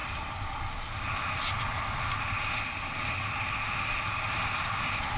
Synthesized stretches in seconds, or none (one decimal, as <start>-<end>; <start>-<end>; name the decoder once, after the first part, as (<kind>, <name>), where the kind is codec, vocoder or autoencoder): none